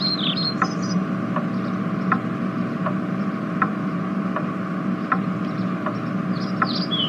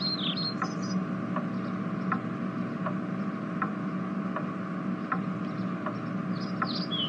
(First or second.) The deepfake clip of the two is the first